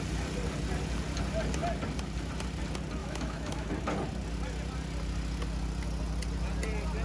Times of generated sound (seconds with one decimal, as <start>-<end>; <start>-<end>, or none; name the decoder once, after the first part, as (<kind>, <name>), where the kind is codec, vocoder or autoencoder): 3.0-3.7 (autoencoder, DAC-VAE)

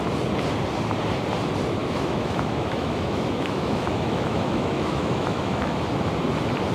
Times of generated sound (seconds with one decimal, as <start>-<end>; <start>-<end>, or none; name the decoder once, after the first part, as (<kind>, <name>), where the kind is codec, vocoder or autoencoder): 1.8-5.8 (autoencoder, DAC-VAE)

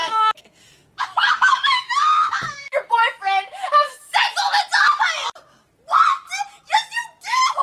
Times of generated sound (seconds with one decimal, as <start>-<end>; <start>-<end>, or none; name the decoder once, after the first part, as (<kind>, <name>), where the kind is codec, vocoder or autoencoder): 0.0-4.2 (autoencoder, DAC-VAE)

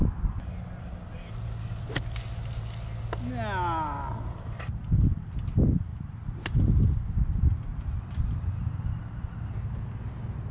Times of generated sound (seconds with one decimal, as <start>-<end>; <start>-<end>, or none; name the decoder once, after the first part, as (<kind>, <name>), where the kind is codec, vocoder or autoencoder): none

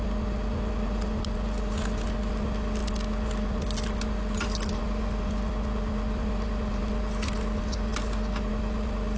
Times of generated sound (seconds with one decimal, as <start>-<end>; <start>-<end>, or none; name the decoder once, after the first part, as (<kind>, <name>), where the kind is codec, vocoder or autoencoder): none

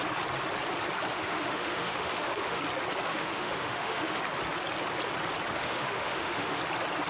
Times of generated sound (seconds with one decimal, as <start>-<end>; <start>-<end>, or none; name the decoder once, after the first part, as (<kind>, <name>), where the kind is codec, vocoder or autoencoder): 1.1-2.6 (autoencoder, DAC-VAE); 3.1-4.2; 5.5-6.6

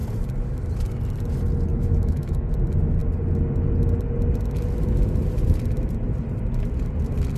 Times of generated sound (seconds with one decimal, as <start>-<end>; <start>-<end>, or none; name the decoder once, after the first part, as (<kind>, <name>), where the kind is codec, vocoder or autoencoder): 1.7-2.5 (autoencoder, DAC-VAE)

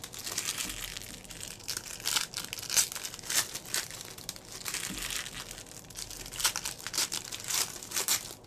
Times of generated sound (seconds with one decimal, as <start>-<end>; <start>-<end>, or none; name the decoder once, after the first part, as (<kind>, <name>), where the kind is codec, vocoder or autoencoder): none